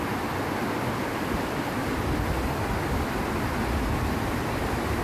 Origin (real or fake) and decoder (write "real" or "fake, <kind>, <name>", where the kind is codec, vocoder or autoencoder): real